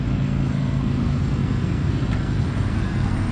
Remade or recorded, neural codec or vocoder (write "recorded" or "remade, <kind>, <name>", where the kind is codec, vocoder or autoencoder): remade, codec, SNAC